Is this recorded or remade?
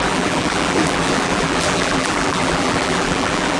remade